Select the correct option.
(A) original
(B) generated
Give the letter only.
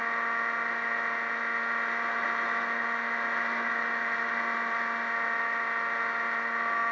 A